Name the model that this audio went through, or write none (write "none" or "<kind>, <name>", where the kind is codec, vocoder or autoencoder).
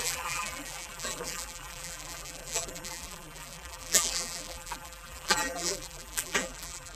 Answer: vocoder, BigVGAN v2